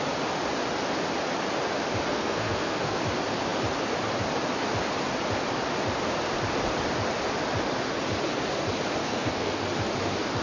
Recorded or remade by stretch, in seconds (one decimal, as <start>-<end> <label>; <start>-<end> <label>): 0.0-2.1 recorded; 2.1-3.0 remade; 3.0-9.0 recorded; 9.0-9.6 remade; 9.6-10.4 recorded